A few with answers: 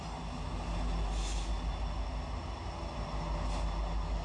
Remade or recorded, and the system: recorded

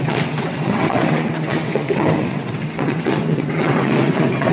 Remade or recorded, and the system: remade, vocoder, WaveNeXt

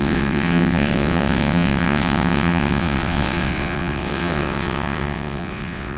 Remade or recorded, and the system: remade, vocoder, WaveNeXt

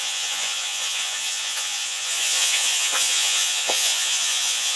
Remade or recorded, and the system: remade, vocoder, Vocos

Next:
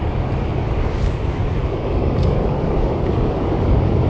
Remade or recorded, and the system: remade, codec, DAC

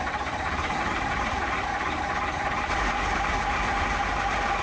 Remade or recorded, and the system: remade, vocoder, BigVGAN v2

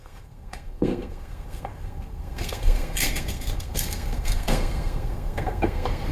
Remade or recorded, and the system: remade, codec, SNAC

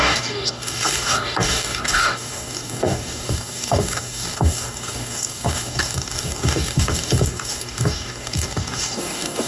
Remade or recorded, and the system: remade, codec, DAC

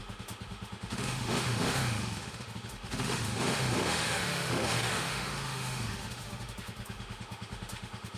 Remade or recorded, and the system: remade, autoencoder, DAC-VAE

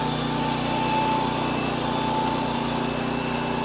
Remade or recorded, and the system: recorded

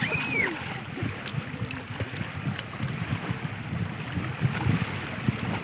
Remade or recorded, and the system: recorded